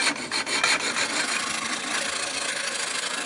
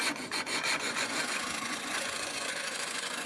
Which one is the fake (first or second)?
second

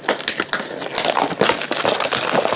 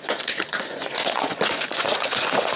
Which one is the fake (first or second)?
second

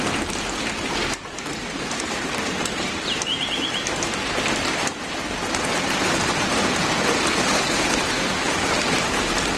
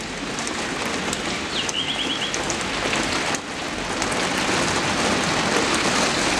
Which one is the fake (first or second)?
first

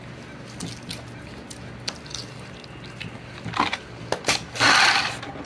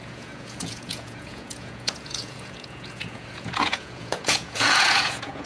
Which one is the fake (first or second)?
second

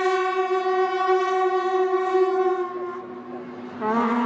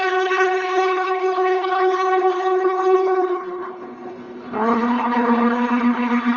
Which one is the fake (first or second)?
second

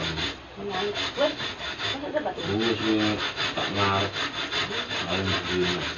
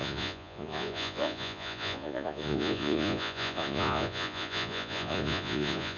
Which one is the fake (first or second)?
second